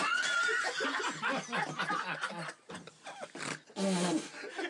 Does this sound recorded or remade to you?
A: recorded